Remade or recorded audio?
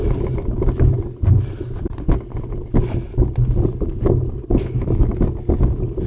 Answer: recorded